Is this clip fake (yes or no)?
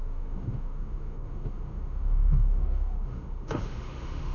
yes